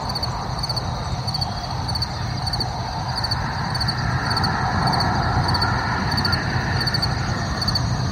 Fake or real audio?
real